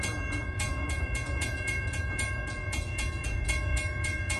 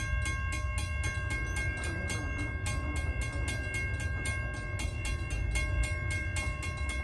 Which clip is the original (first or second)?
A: second